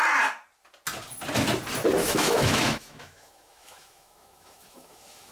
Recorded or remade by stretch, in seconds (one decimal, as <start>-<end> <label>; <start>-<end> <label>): 0.0-2.0 recorded; 2.0-5.3 remade